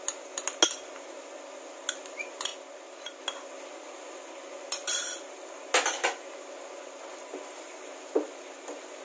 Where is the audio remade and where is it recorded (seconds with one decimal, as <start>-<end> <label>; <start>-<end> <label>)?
0.0-9.0 recorded